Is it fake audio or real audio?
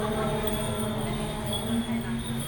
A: real